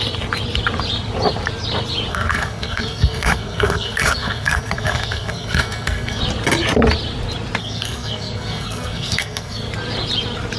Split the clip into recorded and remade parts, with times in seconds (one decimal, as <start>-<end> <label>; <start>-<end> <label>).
0.0-2.1 recorded; 2.1-6.2 remade; 6.2-7.6 recorded; 7.6-9.7 remade; 9.7-10.6 recorded